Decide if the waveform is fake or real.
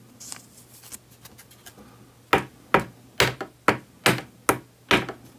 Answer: real